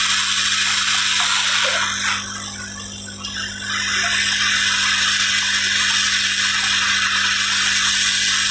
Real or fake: real